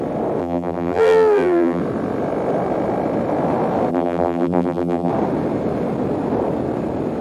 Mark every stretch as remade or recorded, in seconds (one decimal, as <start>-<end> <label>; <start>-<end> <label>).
0.0-0.4 recorded; 0.4-1.8 remade; 1.8-3.9 recorded; 3.9-5.1 remade; 5.1-7.2 recorded